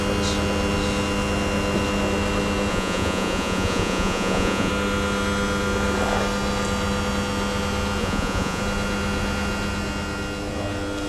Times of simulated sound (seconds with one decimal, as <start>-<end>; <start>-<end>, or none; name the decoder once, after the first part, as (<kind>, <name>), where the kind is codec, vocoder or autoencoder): 2.7-4.7 (vocoder, Vocos); 8.0-8.6